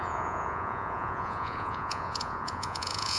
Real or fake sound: fake